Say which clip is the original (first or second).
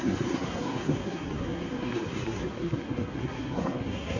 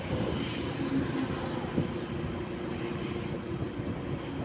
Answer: second